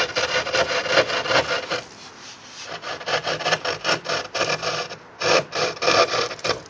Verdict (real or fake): fake